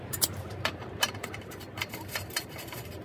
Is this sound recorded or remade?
remade